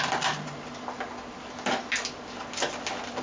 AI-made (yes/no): no